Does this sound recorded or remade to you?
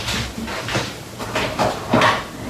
recorded